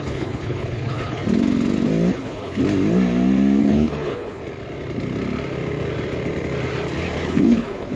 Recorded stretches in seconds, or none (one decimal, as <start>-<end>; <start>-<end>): 1.2-2.1; 2.6-3.6; 4.4-7.3